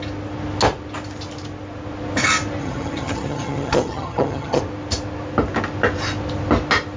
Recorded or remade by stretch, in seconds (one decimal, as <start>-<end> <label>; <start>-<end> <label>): 0.0-2.6 recorded; 2.6-4.6 remade; 4.6-7.0 recorded